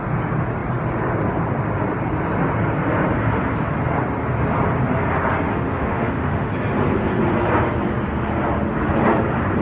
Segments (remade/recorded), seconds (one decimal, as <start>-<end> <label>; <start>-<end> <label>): 0.0-5.5 recorded; 5.5-6.5 remade; 6.5-9.6 recorded